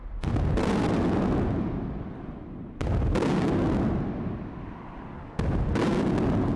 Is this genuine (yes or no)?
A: yes